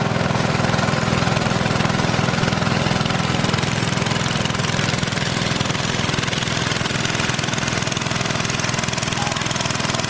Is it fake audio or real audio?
real